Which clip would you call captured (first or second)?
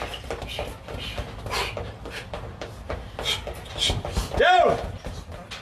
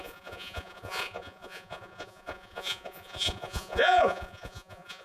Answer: first